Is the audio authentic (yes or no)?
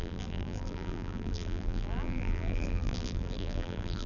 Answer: no